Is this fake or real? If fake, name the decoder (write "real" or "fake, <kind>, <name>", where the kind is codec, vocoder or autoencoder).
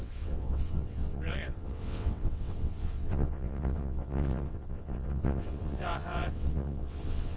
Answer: fake, vocoder, WaveNeXt